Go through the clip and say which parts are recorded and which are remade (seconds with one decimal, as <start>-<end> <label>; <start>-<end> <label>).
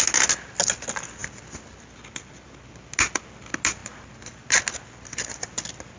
0.0-6.0 recorded